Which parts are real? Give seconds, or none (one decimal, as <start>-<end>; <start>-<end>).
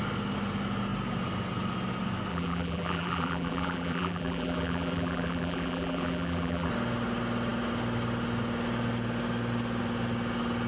0.0-2.3; 6.7-10.7